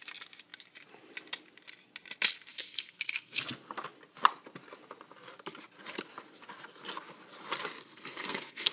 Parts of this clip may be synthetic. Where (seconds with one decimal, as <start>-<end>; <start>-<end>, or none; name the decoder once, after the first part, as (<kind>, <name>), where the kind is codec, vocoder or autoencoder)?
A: 2.5-3.4 (codec, SNAC); 7.8-8.7